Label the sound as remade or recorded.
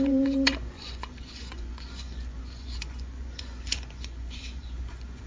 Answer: remade